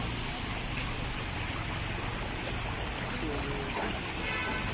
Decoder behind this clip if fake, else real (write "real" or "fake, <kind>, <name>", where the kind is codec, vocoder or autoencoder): real